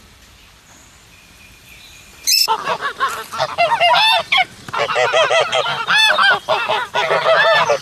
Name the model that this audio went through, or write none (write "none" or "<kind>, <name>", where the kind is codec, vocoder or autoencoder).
vocoder, BigVGAN v2